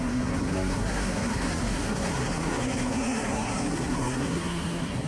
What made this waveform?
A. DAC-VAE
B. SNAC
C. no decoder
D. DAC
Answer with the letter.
B